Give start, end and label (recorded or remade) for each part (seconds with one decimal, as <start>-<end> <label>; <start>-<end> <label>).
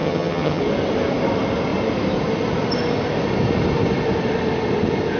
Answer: 0.0-0.6 remade; 0.6-5.2 recorded